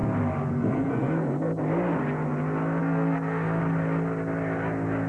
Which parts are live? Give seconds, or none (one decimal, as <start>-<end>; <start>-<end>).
0.0-0.5; 1.5-2.8; 3.6-5.1